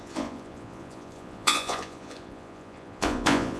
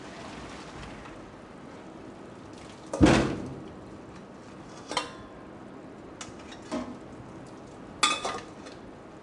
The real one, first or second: second